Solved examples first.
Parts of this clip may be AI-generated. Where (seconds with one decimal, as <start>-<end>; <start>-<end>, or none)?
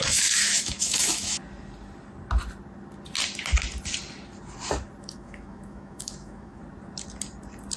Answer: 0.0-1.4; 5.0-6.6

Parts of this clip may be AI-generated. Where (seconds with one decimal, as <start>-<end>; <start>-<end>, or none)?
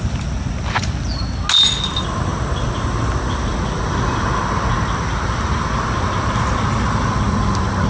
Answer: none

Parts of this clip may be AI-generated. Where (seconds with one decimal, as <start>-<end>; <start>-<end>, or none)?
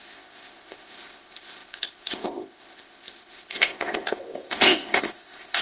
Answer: 0.0-5.6